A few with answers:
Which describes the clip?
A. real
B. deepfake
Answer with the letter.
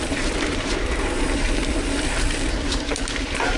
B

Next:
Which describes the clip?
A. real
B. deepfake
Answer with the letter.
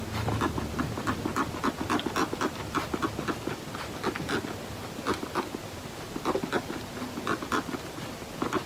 A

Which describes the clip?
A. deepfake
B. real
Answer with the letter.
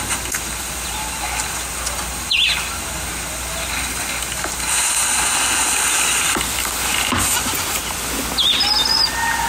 B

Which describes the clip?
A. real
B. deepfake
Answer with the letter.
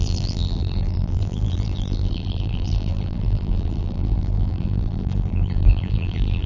B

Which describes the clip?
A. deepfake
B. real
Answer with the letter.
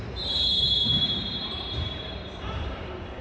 A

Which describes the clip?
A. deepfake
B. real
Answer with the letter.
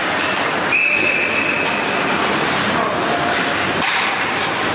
A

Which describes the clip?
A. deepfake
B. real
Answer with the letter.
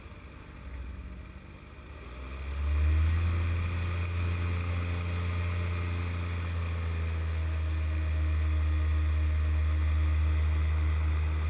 B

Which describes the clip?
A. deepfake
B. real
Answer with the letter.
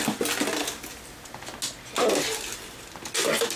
B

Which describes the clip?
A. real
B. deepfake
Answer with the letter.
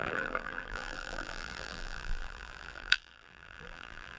B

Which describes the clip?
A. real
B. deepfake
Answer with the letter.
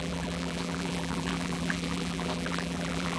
B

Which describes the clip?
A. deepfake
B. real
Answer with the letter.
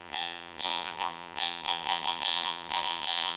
A